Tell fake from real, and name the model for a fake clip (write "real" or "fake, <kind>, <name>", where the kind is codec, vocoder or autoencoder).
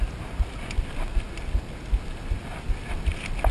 real